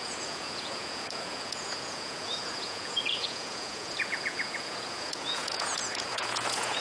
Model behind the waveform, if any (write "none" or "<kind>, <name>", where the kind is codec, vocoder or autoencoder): vocoder, Vocos